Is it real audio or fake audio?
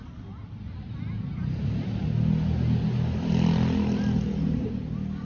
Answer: real